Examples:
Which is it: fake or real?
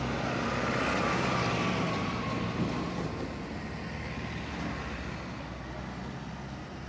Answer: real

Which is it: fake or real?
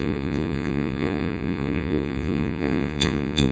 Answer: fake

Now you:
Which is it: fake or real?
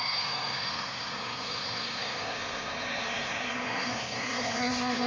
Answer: fake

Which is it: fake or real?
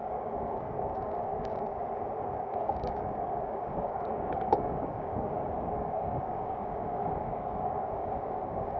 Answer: fake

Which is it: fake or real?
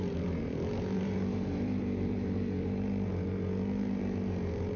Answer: fake